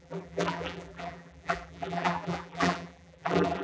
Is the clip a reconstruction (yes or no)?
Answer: yes